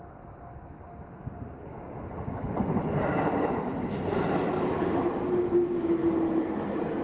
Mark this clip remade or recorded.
recorded